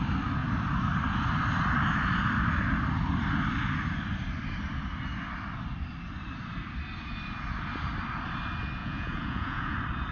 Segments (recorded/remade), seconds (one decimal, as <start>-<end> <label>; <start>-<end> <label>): 0.0-8.8 recorded; 8.8-9.7 remade; 9.7-10.1 recorded